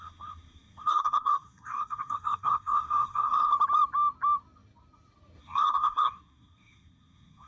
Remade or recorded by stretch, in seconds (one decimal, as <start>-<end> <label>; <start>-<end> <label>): 0.0-3.5 remade; 3.5-5.4 recorded; 5.4-7.5 remade